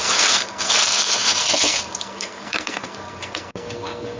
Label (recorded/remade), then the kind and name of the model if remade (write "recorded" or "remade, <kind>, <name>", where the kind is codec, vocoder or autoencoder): remade, codec, SNAC